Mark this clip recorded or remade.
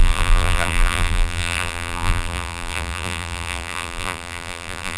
remade